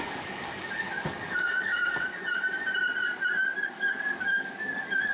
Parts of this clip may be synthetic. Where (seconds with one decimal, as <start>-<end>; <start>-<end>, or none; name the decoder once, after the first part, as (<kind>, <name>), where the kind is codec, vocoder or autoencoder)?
0.0-2.1 (codec, DAC); 3.7-5.1